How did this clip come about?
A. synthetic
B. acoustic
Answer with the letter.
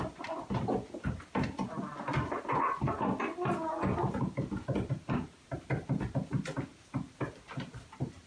B